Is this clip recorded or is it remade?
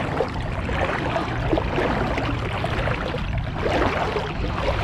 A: recorded